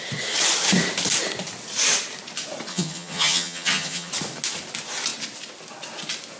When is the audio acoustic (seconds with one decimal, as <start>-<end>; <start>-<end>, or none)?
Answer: 0.0-2.7; 4.1-6.4